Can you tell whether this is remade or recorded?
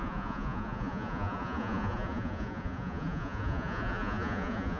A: remade